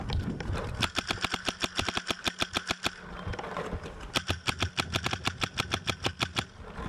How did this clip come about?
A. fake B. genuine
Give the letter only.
B